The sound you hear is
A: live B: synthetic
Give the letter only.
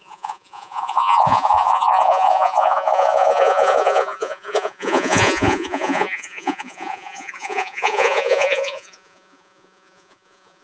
B